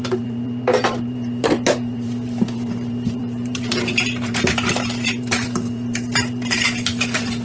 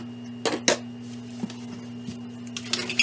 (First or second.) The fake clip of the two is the first